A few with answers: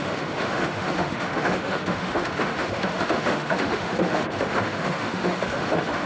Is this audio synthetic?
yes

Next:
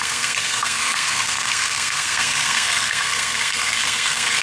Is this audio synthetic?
yes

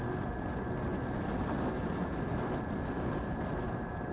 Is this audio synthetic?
no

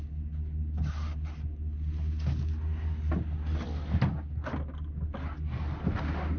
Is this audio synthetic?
no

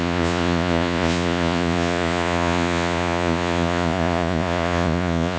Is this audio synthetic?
yes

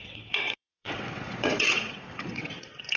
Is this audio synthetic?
yes